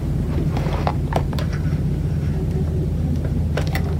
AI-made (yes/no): yes